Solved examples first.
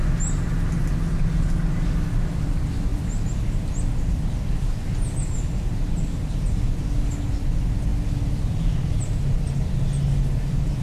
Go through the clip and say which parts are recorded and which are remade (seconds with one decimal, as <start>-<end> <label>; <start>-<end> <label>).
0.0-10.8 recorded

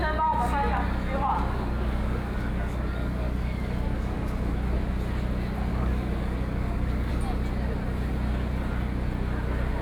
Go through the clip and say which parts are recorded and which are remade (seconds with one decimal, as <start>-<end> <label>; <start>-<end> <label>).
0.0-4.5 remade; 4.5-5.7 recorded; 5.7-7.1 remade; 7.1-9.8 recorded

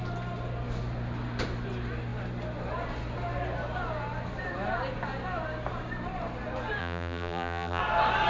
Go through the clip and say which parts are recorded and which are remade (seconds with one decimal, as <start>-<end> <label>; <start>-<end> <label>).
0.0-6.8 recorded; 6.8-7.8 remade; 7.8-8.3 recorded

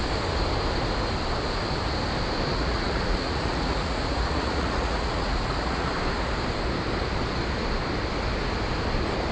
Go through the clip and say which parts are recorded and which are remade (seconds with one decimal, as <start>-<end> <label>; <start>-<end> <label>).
0.0-2.5 recorded; 2.5-5.9 remade; 5.9-9.3 recorded

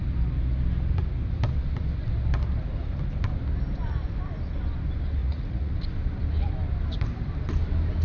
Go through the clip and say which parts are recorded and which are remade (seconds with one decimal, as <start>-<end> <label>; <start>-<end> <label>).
0.0-5.2 recorded; 5.2-5.7 remade; 5.7-8.0 recorded